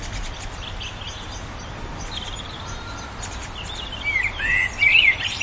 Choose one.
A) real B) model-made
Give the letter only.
A